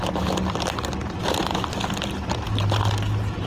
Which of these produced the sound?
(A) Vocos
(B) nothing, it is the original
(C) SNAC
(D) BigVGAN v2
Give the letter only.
B